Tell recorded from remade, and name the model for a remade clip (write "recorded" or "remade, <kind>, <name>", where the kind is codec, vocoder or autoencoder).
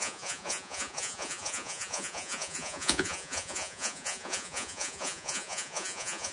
remade, vocoder, Vocos